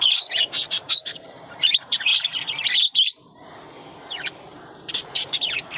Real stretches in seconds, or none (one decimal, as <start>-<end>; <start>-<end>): 2.1-4.9

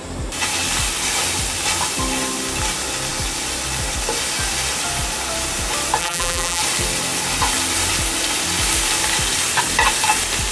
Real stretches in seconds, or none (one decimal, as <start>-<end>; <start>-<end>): 0.0-6.0; 6.6-10.5

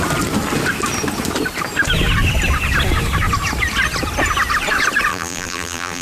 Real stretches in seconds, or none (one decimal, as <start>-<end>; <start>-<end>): 0.0-5.1

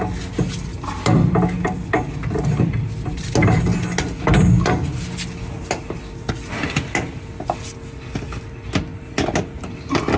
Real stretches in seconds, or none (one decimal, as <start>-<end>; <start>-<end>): 0.0-10.2

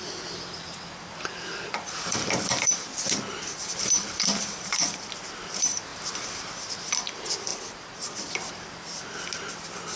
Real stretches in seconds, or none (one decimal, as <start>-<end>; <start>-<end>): 5.9-6.6

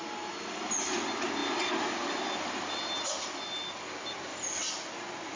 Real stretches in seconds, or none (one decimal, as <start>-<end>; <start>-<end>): 0.0-4.3

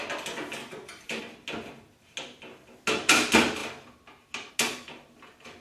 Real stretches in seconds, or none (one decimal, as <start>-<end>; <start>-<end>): 0.0-0.6; 1.2-5.6